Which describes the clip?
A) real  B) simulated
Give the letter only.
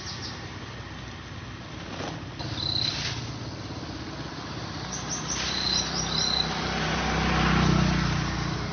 A